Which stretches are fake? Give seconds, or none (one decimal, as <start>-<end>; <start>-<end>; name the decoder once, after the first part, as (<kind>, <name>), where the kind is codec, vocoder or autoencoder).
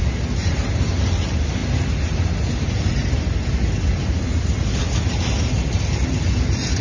0.4-1.2 (vocoder, BigVGAN v2)